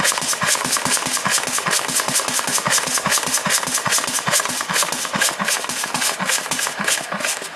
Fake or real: fake